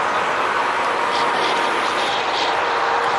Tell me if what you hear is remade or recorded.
remade